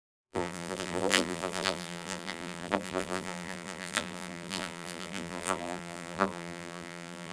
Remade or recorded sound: remade